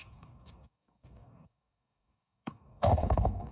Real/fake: fake